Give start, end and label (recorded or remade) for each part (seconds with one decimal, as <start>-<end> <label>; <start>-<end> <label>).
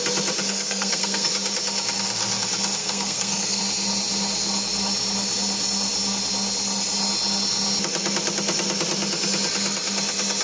0.0-0.5 recorded; 0.5-1.3 remade; 1.3-2.8 recorded; 2.8-3.6 remade; 3.6-10.4 recorded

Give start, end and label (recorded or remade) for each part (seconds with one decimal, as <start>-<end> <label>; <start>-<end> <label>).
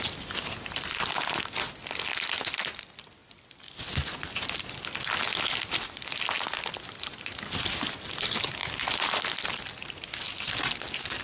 0.0-8.6 recorded; 8.6-9.2 remade; 9.2-11.2 recorded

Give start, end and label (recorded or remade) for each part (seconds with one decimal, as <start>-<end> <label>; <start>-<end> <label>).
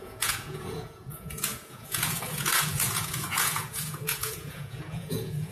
0.0-5.5 remade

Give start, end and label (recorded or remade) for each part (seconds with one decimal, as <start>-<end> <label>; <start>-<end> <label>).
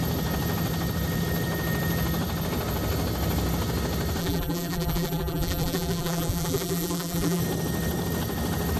0.0-4.2 recorded; 4.2-7.4 remade; 7.4-8.8 recorded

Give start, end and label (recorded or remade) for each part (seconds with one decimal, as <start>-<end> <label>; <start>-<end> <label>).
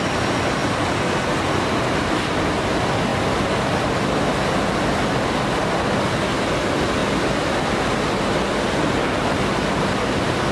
0.0-10.5 recorded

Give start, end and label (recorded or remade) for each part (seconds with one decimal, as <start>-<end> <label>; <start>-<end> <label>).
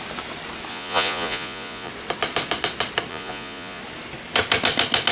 0.0-0.7 recorded; 0.7-1.9 remade; 1.9-3.1 recorded; 3.1-3.8 remade; 3.8-5.1 recorded